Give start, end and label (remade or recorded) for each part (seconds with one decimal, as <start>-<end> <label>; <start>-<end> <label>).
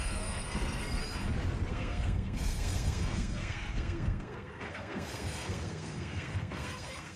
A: 0.0-1.0 remade; 1.0-1.7 recorded; 1.7-7.2 remade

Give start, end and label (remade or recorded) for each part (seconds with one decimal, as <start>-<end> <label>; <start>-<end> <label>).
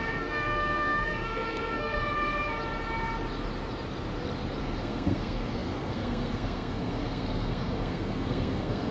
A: 0.0-2.0 remade; 2.0-4.6 recorded; 4.6-8.9 remade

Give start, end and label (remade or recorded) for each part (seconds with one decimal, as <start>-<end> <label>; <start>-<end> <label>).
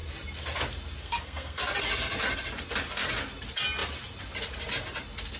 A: 0.0-1.0 recorded; 1.0-1.6 remade; 1.6-5.4 recorded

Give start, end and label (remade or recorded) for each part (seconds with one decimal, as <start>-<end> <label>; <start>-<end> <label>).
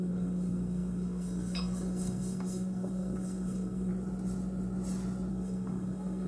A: 0.0-3.9 remade; 3.9-5.3 recorded; 5.3-6.3 remade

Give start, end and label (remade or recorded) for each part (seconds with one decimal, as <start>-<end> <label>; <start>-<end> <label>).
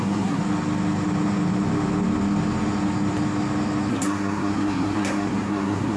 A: 0.0-0.4 remade; 0.4-3.9 recorded; 3.9-6.0 remade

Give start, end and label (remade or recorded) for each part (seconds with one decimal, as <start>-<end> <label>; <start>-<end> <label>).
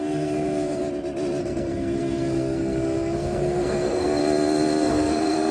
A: 0.0-0.8 remade; 0.8-1.4 recorded; 1.4-4.2 remade; 4.2-4.9 recorded; 4.9-5.5 remade